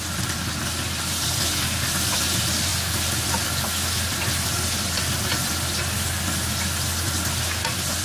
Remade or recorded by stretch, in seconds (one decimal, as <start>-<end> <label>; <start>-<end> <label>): 0.0-8.0 recorded